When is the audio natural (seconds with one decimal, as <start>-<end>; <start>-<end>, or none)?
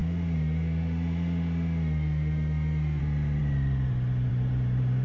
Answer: 3.0-5.0